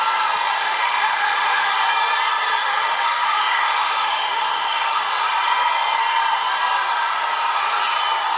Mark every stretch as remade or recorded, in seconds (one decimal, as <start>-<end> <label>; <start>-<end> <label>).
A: 0.0-0.6 recorded; 0.6-1.9 remade; 1.9-2.6 recorded; 2.6-5.0 remade; 5.0-8.4 recorded